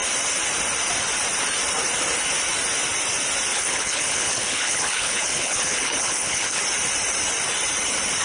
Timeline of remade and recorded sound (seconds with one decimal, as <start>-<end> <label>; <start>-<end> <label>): 0.0-3.5 recorded; 3.5-6.6 remade; 6.6-8.2 recorded